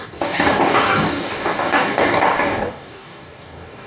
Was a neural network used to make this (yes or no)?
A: yes